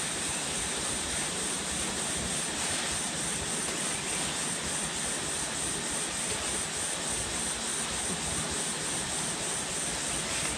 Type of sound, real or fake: real